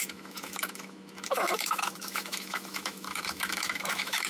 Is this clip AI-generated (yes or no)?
yes